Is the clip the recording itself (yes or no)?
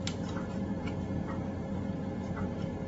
yes